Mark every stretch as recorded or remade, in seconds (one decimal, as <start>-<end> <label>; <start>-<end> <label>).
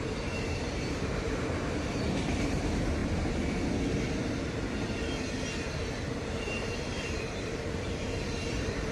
0.0-3.0 remade; 3.0-6.7 recorded; 6.7-8.9 remade